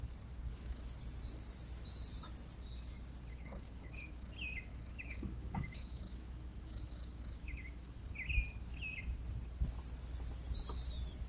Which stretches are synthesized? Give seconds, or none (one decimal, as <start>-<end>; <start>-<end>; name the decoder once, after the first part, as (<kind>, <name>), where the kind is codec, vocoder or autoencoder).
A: 0.5-1.0 (autoencoder, DAC-VAE); 3.3-4.3; 4.7-8.1